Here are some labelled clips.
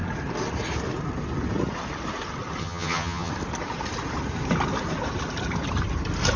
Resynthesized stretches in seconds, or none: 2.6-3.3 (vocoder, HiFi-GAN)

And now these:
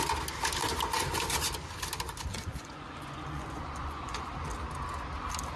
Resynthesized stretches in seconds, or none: 2.3-4.3 (vocoder, Vocos)

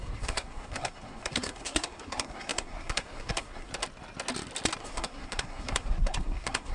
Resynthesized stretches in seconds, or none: 0.0-3.7 (codec, SNAC); 4.8-6.7

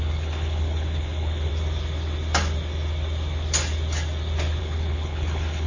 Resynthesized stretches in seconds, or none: 0.0-1.5 (codec, HILCodec); 4.6-5.7

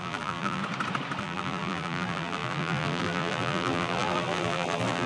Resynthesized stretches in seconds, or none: 0.0-0.6 (vocoder, BigVGAN v2); 1.2-5.1

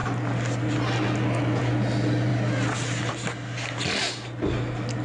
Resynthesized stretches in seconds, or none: none

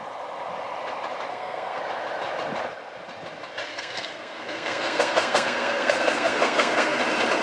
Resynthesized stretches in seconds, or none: 1.3-1.8 (codec, SNAC); 3.7-7.0